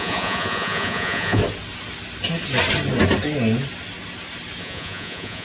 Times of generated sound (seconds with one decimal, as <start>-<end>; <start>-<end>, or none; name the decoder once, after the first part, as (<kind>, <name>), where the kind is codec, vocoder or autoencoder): 0.0-1.4 (vocoder, Vocos); 4.6-5.4